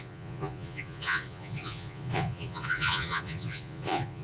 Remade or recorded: remade